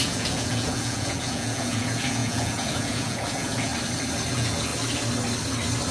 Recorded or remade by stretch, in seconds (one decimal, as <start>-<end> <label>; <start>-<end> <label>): 0.0-3.7 remade; 3.7-4.3 recorded; 4.3-4.7 remade; 4.7-5.9 recorded